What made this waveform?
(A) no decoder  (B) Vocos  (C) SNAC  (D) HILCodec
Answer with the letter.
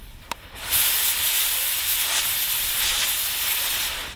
A